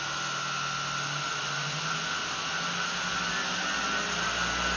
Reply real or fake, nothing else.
real